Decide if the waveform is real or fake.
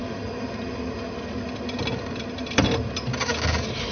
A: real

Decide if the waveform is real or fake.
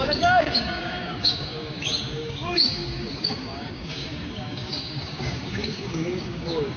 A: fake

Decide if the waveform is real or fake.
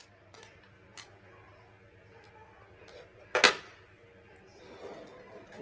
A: real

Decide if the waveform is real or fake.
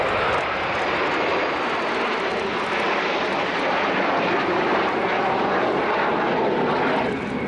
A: real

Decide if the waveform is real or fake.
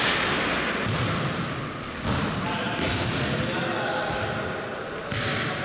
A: real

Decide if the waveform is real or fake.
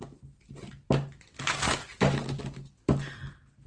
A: real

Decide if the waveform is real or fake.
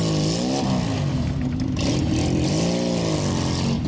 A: real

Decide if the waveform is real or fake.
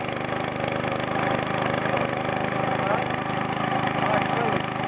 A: real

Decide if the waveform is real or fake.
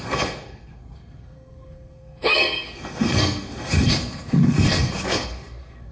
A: fake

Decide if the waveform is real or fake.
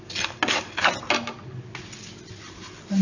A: real